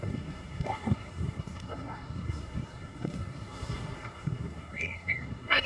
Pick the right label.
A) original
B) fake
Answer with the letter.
B